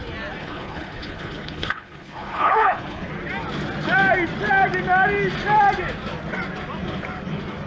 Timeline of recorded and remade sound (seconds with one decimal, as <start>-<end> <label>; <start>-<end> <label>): 0.0-0.4 recorded; 0.4-3.1 remade; 3.1-7.7 recorded